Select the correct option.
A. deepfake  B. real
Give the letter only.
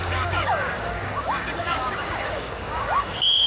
A